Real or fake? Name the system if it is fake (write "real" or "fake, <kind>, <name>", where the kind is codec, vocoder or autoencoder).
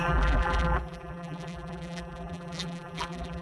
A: fake, vocoder, BigVGAN v2